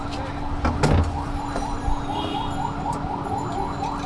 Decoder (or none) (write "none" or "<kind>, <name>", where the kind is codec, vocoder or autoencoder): none